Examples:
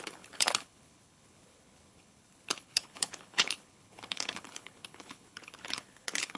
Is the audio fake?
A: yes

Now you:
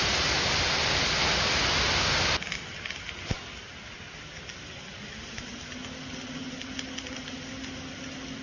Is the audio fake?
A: no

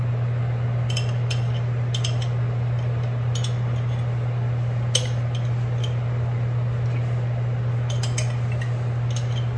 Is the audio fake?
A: no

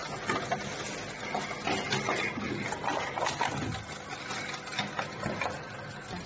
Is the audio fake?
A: no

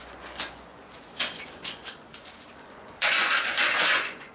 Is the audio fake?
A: yes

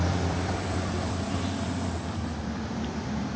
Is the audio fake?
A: yes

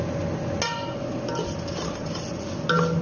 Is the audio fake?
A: no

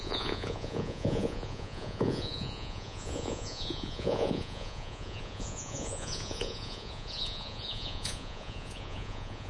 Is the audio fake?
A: yes